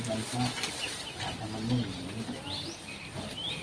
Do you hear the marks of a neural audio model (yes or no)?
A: no